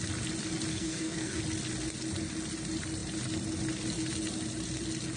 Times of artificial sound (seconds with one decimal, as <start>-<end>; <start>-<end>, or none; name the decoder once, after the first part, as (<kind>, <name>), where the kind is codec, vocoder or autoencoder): 0.7-1.4 (codec, SNAC)